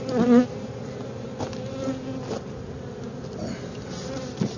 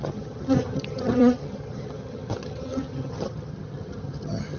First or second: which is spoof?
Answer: second